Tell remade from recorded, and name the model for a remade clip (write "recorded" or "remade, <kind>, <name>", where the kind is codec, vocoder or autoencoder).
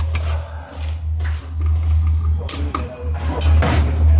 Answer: recorded